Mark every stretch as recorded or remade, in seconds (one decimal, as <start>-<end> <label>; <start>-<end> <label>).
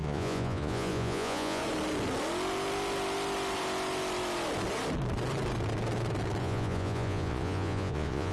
0.0-1.6 remade; 1.6-6.4 recorded; 6.4-8.3 remade